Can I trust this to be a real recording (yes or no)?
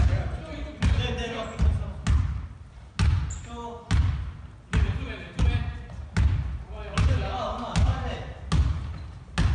yes